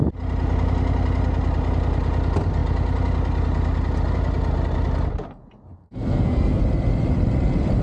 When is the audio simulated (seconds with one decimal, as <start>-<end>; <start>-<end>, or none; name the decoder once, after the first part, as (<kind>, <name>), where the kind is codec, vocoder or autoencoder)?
5.8-6.6 (codec, SNAC)